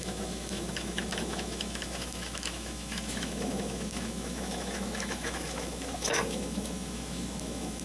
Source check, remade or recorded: remade